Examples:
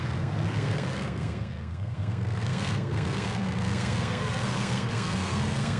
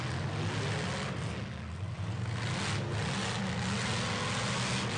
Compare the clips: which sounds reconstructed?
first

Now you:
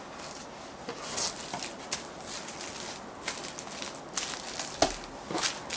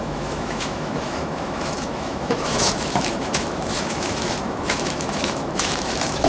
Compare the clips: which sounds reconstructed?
second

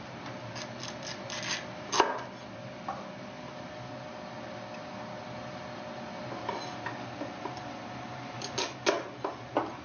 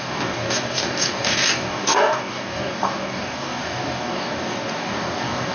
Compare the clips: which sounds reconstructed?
second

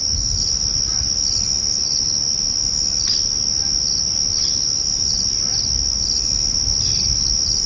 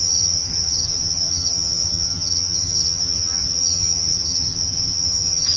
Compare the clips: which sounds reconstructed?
second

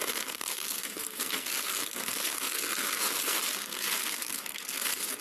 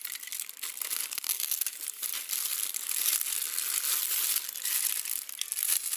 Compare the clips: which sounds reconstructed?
first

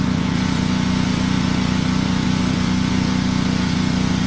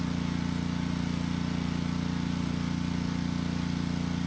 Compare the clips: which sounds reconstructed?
first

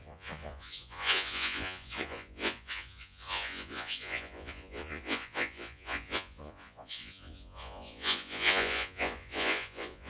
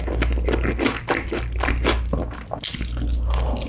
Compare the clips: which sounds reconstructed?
first